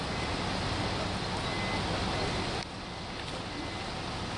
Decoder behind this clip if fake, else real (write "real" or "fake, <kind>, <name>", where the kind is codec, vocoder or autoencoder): real